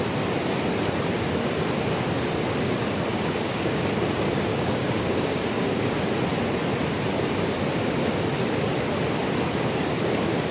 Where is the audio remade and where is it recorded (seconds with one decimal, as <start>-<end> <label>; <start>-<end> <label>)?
0.0-3.1 recorded; 3.1-3.7 remade; 3.7-4.5 recorded; 4.5-6.1 remade; 6.1-10.5 recorded